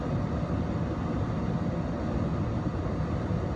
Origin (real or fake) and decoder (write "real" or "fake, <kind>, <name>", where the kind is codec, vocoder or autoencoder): real